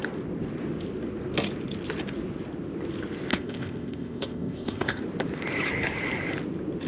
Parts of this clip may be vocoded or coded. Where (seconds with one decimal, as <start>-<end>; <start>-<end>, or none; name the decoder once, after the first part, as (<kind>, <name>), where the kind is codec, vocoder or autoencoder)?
3.3-5.0 (codec, ZipCodec)